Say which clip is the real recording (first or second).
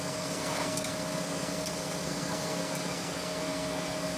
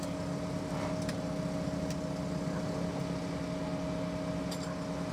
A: second